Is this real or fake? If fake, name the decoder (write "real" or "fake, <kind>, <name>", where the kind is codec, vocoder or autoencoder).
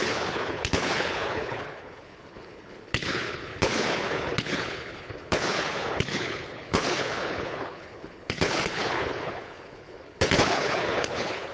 fake, codec, HILCodec